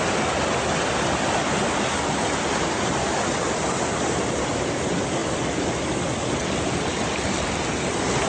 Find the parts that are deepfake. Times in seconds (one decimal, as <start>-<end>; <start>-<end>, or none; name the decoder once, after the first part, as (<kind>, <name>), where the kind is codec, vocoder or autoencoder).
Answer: none

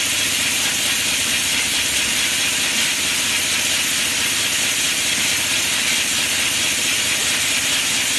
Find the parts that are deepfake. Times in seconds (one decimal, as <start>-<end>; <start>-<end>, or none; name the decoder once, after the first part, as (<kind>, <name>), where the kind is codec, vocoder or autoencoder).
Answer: 0.0-8.2 (vocoder, BigVGAN v2)

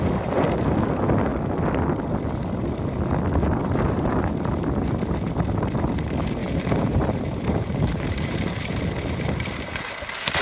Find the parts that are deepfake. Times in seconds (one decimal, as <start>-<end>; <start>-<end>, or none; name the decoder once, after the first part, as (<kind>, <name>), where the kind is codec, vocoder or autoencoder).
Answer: 3.6-4.3 (vocoder, BigVGAN v2); 6.4-8.8

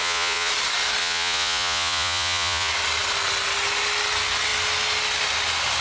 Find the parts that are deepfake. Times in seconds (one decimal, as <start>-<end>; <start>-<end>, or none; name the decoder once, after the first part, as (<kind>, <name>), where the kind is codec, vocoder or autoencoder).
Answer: 0.0-0.5 (vocoder, Vocos); 1.0-2.7